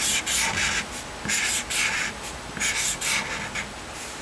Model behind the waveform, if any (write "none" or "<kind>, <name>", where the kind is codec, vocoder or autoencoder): none